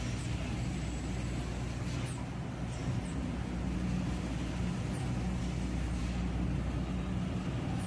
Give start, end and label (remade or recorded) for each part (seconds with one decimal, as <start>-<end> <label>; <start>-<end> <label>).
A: 0.0-7.9 recorded